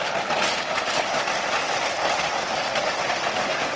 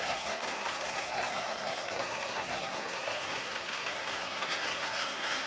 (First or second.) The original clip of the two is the first